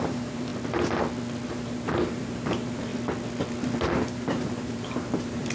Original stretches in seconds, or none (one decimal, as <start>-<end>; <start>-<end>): 0.5-1.5; 2.9-3.9